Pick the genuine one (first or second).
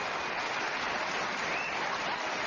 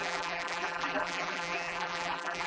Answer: first